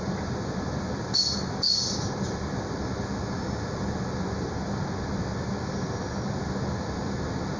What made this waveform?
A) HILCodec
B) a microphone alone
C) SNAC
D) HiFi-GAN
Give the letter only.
B